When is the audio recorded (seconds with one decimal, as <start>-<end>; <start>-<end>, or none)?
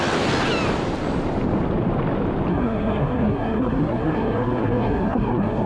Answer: 0.0-2.5